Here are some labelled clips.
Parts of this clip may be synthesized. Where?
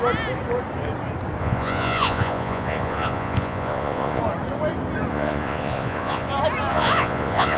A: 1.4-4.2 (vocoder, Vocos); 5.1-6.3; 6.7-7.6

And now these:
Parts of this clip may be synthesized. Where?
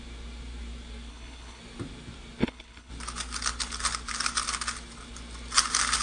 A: 1.1-1.6 (codec, HILCodec); 2.4-2.9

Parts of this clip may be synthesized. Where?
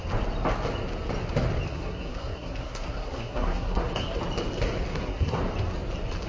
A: 1.7-4.2 (codec, SNAC); 4.9-5.4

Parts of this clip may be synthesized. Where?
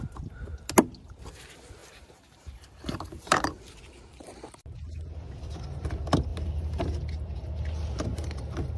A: 1.8-3.7 (vocoder, BigVGAN v2); 6.3-6.8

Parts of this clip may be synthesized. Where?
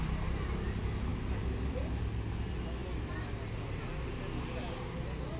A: none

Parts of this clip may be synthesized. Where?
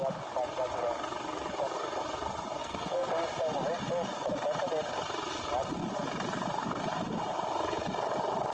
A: 2.6-3.1 (codec, SNAC)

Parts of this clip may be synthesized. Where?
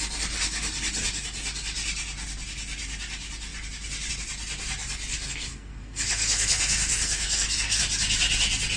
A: 5.1-7.8 (codec, SNAC)